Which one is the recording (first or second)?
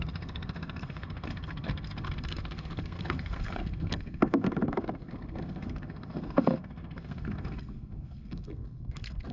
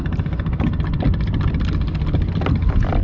second